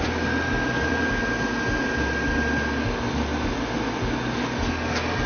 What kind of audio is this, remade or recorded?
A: recorded